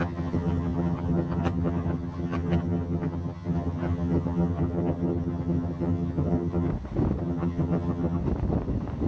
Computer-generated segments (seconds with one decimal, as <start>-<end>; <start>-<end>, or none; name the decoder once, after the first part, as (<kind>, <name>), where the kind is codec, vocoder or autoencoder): 0.0-6.7 (vocoder, HiFi-GAN); 7.2-8.2